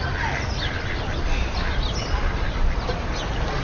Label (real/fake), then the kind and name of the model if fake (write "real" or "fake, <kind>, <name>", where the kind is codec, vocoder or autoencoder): real